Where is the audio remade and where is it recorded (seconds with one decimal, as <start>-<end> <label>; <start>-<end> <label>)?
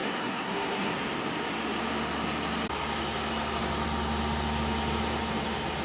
0.0-0.9 remade; 0.9-5.8 recorded